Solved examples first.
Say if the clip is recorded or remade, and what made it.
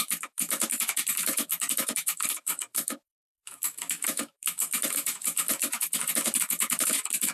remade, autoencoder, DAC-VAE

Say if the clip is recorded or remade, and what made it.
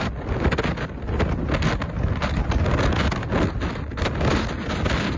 recorded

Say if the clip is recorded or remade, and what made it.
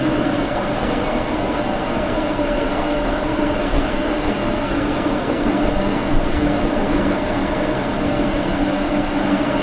remade, codec, SNAC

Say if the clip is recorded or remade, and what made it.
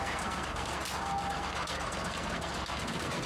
remade, codec, SNAC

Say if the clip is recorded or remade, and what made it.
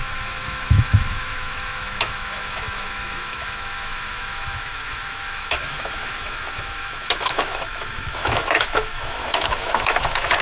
remade, autoencoder, DAC-VAE